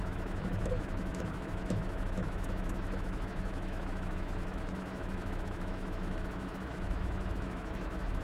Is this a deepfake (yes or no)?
yes